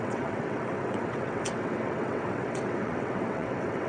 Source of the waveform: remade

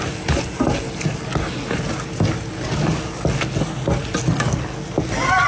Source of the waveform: recorded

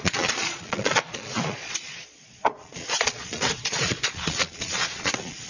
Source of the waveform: remade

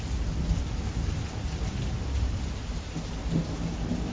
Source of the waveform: recorded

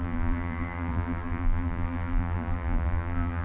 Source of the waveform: remade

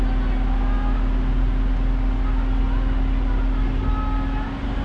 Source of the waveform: recorded